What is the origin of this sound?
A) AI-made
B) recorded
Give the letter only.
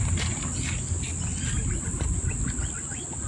B